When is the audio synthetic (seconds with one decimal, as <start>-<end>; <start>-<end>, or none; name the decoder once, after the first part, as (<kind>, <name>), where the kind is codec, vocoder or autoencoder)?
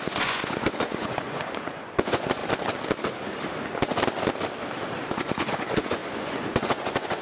0.0-2.4 (vocoder, Vocos); 5.1-7.2